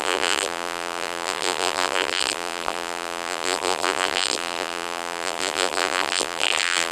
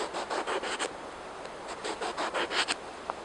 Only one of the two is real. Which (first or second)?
second